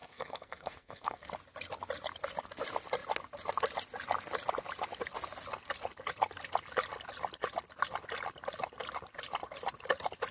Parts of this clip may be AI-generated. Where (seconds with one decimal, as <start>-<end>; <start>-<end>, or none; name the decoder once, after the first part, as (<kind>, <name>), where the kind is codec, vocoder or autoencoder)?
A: 0.0-1.3 (codec, SNAC)